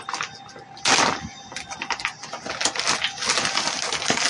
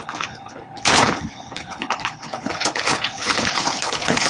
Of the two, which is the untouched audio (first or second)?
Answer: first